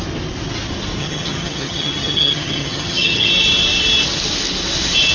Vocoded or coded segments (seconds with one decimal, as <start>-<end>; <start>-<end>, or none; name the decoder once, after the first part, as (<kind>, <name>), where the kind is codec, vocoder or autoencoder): 1.0-3.3 (vocoder, HiFi-GAN)

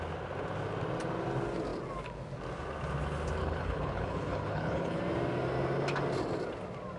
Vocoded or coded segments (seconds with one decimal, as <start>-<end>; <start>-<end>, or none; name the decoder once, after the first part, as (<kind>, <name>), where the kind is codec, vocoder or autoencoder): 3.4-5.0 (codec, HILCodec)